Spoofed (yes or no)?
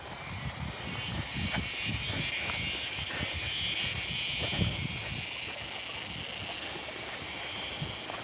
no